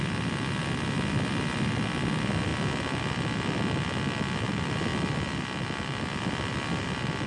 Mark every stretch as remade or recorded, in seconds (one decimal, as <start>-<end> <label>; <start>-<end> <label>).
0.0-0.6 remade; 0.6-1.1 recorded; 1.1-2.5 remade; 2.5-4.5 recorded; 4.5-7.3 remade